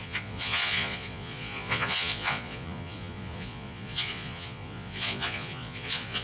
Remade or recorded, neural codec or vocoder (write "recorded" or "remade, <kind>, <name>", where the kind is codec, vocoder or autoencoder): remade, vocoder, Vocos